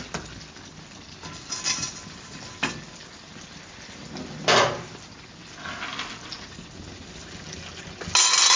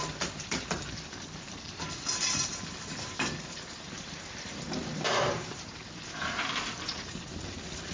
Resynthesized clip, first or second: second